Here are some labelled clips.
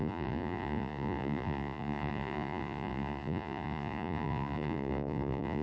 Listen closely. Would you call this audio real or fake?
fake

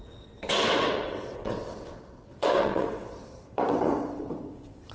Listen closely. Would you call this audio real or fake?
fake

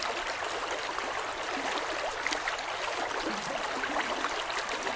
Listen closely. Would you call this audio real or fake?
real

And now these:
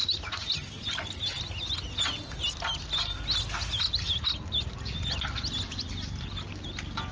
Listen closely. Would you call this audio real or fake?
real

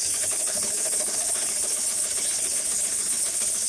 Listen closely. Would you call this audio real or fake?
fake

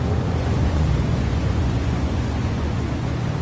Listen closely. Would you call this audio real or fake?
fake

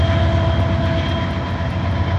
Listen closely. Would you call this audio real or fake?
real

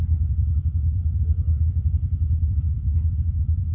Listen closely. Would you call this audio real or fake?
fake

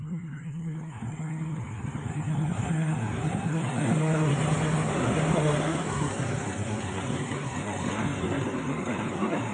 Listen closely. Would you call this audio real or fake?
fake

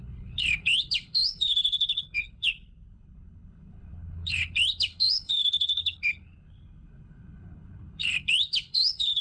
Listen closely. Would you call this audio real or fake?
fake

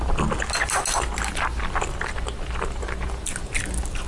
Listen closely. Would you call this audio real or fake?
real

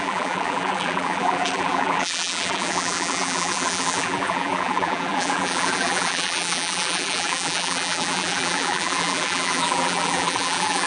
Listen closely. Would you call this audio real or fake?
fake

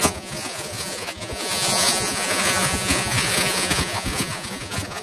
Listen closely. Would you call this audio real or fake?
fake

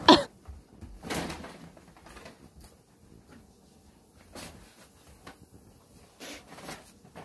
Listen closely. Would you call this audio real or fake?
real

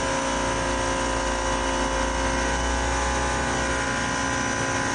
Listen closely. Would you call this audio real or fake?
real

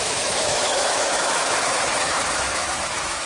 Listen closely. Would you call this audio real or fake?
fake